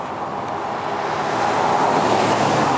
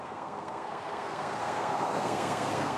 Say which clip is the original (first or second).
first